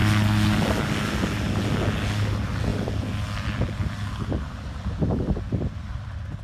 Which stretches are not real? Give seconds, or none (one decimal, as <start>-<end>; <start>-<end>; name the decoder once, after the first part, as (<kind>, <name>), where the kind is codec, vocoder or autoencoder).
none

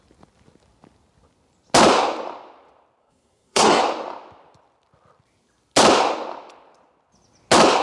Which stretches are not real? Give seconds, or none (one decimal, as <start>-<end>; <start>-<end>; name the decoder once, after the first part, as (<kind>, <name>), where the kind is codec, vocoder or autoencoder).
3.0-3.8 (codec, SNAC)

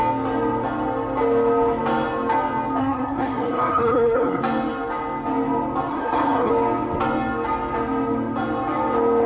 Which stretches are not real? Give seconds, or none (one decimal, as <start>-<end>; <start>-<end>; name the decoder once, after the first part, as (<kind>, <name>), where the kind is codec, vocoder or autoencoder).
2.8-4.4 (codec, SNAC); 5.9-6.5